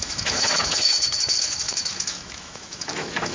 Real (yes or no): no